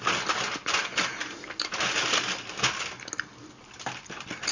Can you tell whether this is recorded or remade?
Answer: recorded